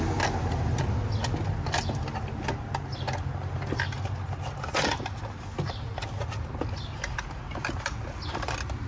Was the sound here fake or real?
real